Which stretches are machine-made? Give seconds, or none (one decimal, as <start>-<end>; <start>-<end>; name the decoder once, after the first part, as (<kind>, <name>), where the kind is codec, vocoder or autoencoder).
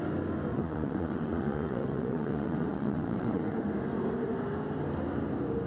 0.5-3.6 (vocoder, WaveNeXt)